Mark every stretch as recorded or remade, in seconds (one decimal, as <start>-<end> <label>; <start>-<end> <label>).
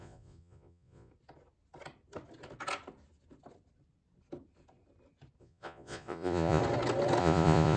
0.0-1.1 remade; 1.1-5.4 recorded; 5.4-6.6 remade; 6.6-7.2 recorded; 7.2-7.8 remade